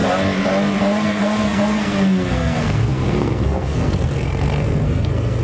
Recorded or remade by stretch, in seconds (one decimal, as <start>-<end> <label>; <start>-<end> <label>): 0.0-0.8 recorded; 0.8-5.4 remade